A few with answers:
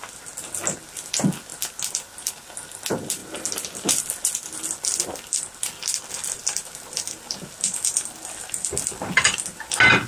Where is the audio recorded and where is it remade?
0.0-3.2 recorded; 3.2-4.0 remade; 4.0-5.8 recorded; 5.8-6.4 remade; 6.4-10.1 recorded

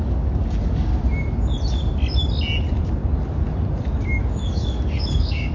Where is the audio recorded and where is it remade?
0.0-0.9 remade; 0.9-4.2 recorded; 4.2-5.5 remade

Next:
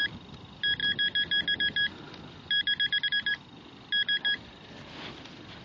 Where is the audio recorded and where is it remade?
0.0-5.6 recorded

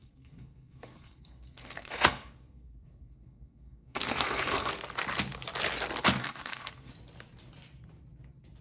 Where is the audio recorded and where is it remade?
0.0-4.7 remade; 4.7-6.2 recorded; 6.2-6.9 remade; 6.9-8.6 recorded

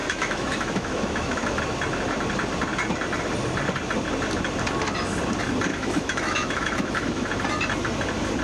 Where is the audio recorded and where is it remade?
0.0-1.6 remade; 1.6-5.7 recorded; 5.7-7.3 remade; 7.3-8.4 recorded